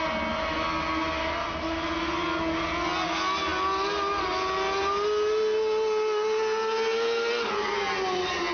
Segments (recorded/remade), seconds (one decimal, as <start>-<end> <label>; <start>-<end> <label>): 0.0-8.5 recorded